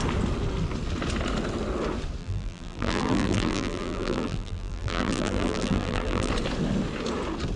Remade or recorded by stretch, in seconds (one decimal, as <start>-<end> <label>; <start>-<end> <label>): 0.0-2.2 recorded; 2.2-6.3 remade; 6.3-7.6 recorded

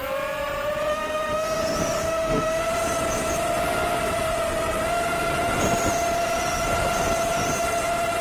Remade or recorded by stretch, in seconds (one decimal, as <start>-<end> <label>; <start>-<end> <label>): 0.0-0.9 recorded; 0.9-1.6 remade; 1.6-2.0 recorded; 2.0-2.7 remade; 2.7-8.2 recorded

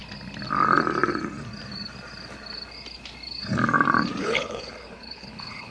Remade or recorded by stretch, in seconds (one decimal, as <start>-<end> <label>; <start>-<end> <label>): 0.0-4.2 recorded; 4.2-5.7 remade

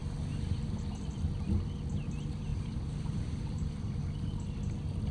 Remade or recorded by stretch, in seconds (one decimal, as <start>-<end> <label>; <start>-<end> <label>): 0.0-2.5 recorded; 2.5-4.0 remade; 4.0-5.1 recorded

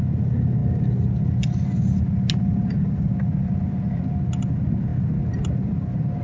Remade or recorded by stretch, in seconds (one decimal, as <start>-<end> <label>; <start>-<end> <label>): 0.0-6.2 recorded

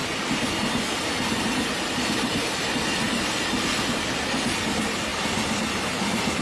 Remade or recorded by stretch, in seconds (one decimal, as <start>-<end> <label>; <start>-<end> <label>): 0.0-6.4 recorded

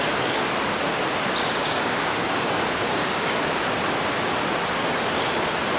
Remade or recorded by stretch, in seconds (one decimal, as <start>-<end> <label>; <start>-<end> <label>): 0.0-1.4 recorded; 1.4-3.3 remade; 3.3-5.8 recorded